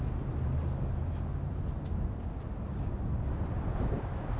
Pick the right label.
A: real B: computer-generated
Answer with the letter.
A